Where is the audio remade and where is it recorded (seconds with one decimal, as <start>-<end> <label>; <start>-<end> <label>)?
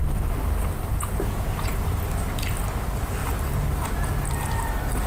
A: 0.0-0.9 recorded; 0.9-1.8 remade; 1.8-5.1 recorded